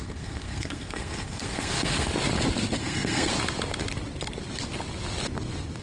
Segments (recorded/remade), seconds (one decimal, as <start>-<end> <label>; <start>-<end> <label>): 0.0-2.1 remade; 2.1-2.8 recorded; 2.8-3.3 remade; 3.3-5.8 recorded